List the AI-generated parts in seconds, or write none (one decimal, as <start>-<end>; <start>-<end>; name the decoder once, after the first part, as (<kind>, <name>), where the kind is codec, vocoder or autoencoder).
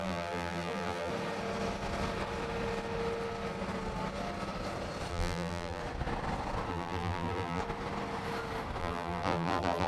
0.0-1.1 (vocoder, BigVGAN v2); 5.1-5.8; 6.7-7.6; 8.8-9.9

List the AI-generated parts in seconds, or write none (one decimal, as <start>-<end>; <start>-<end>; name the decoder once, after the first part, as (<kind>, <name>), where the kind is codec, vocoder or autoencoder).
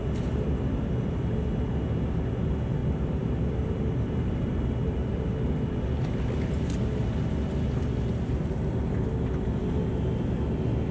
2.8-5.5 (vocoder, BigVGAN v2)